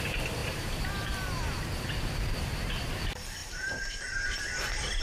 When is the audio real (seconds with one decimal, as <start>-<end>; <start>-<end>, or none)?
0.0-0.4; 1.6-3.4